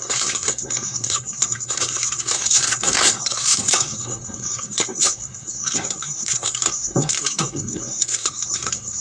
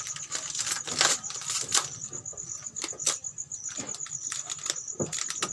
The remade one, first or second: first